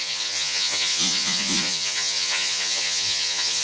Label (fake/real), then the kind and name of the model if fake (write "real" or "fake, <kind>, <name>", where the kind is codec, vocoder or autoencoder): fake, vocoder, Vocos